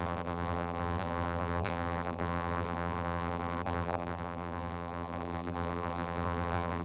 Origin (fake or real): fake